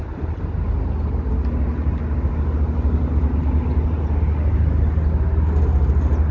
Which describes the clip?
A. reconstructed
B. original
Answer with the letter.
B